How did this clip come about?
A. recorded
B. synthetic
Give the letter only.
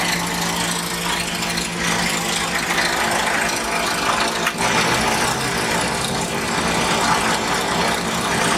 A